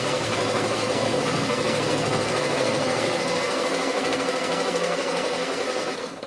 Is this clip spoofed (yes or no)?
yes